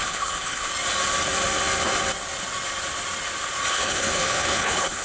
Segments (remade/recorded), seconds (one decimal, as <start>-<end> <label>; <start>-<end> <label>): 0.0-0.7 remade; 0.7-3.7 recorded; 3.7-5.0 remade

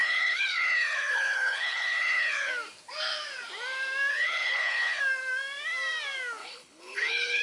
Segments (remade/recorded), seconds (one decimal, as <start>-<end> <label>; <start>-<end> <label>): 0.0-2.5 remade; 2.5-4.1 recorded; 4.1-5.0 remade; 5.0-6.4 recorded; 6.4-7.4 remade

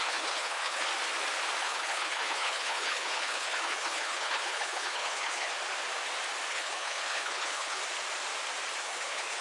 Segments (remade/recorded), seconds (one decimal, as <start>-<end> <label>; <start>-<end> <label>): 0.0-0.9 remade; 0.9-1.6 recorded; 1.6-5.5 remade; 5.5-6.5 recorded; 6.5-7.8 remade; 7.8-8.8 recorded; 8.8-9.4 remade